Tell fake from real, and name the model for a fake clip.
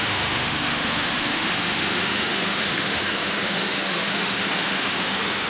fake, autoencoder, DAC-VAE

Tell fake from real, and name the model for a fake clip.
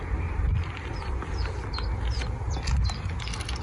real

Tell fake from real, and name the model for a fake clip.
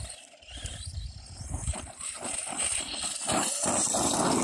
real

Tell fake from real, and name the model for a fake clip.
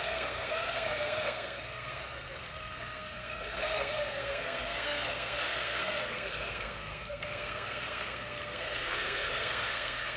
fake, codec, SNAC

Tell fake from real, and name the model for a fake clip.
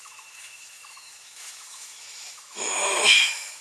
fake, autoencoder, DAC-VAE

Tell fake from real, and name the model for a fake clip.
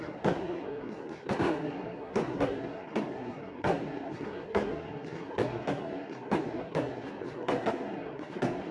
fake, codec, SNAC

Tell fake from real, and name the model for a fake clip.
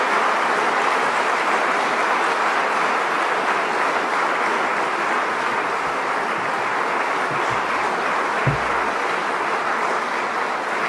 real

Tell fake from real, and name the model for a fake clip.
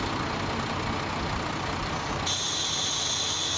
real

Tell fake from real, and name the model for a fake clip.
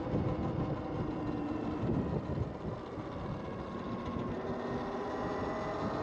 real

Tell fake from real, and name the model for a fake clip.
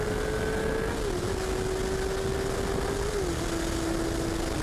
real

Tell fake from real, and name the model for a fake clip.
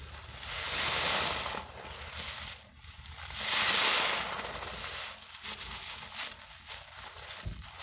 real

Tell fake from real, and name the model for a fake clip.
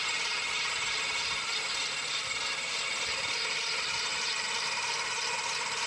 real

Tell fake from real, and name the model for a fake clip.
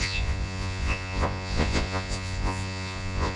fake, vocoder, Vocos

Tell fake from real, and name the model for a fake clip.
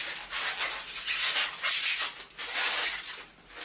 real